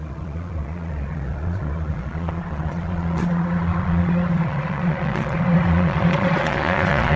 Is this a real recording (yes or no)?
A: no